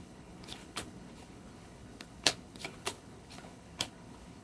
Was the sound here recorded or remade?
remade